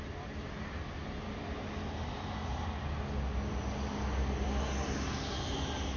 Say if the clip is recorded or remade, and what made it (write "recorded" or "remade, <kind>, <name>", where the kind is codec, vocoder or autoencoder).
recorded